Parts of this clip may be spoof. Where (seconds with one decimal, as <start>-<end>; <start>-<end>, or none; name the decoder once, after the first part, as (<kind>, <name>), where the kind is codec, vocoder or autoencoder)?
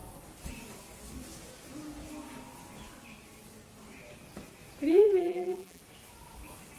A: 4.9-5.8 (vocoder, BigVGAN v2)